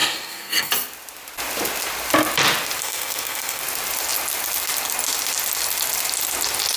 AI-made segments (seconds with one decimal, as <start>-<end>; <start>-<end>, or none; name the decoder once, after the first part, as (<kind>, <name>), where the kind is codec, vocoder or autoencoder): 0.0-0.7 (codec, SNAC); 2.8-3.6

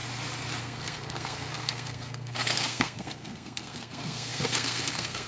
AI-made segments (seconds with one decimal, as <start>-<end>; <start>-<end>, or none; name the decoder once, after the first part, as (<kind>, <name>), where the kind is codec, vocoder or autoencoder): 0.6-5.3 (codec, SNAC)

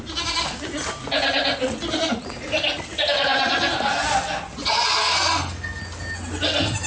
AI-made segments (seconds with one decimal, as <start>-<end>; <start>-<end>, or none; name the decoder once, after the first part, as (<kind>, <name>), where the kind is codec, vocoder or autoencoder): 5.0-5.8 (codec, SNAC)

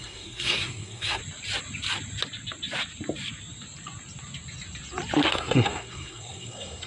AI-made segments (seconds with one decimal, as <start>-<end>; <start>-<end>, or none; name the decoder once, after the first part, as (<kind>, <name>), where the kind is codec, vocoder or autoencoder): 0.0-1.2 (codec, SNAC); 5.3-6.9

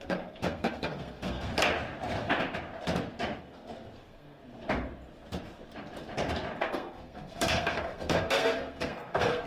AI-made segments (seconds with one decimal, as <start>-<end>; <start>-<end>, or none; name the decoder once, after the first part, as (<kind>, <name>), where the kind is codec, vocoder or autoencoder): 0.0-1.5 (codec, SNAC); 3.4-4.4; 6.6-9.5